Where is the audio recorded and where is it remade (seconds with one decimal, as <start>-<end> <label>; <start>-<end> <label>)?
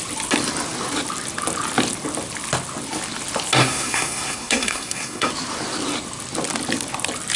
0.0-3.6 recorded; 3.6-5.3 remade; 5.3-7.4 recorded